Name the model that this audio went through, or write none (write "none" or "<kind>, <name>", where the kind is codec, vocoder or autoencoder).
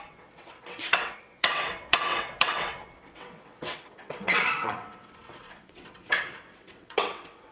vocoder, WaveNeXt